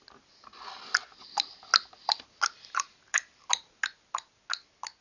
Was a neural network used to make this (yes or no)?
no